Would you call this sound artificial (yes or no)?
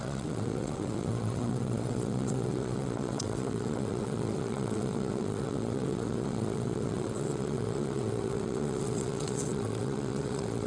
yes